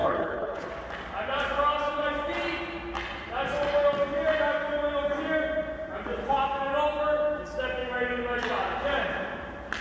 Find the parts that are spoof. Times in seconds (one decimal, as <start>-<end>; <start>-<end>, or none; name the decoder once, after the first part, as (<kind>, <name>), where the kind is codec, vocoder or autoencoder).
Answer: 0.0-0.7 (codec, HILCodec)